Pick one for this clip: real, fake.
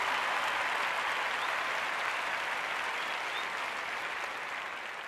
real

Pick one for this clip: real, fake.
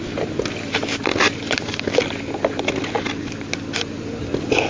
real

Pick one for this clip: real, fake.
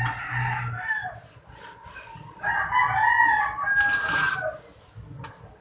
real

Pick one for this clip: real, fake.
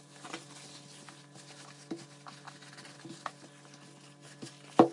real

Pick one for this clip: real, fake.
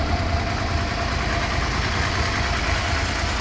real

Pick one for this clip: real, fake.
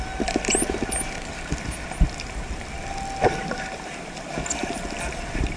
real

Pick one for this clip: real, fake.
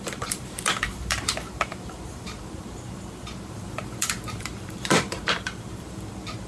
fake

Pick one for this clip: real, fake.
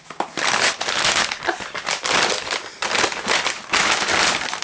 fake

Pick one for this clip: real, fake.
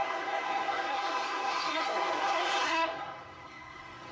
fake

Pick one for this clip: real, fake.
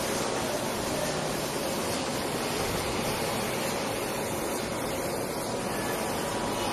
real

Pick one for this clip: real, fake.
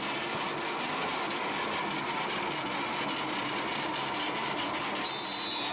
real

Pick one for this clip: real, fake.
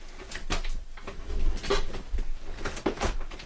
real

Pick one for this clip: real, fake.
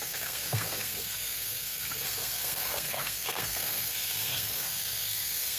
fake